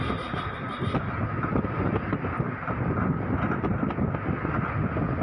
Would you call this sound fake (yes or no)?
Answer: no